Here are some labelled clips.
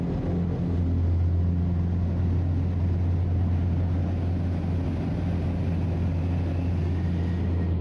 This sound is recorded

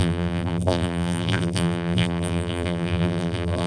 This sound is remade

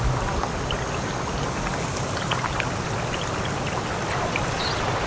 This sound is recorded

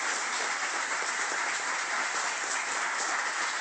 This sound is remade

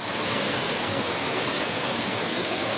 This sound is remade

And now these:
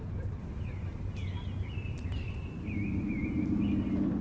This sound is recorded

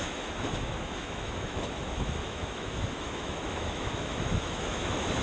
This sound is remade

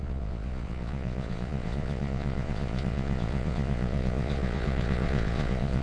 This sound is remade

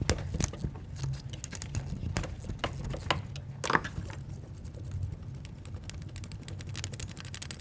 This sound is recorded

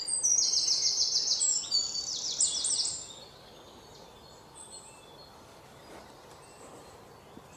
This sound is recorded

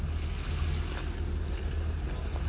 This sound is recorded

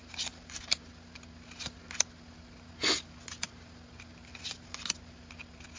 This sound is recorded